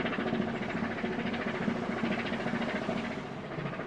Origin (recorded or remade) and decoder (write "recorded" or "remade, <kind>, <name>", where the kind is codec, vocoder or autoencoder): recorded